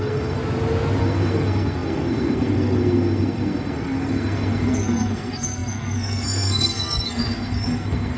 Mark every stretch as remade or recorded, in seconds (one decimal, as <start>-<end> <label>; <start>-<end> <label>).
0.0-0.4 remade; 0.4-1.0 recorded; 1.0-8.2 remade